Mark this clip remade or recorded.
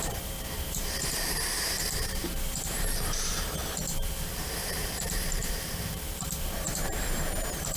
remade